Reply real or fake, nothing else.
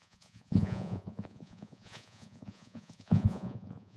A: fake